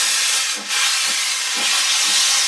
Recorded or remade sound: recorded